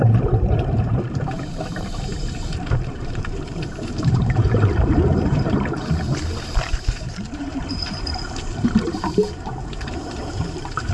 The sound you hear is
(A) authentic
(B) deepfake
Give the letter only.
B